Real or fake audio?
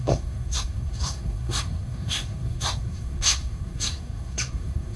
fake